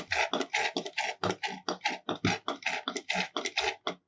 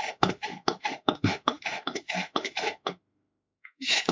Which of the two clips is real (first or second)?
first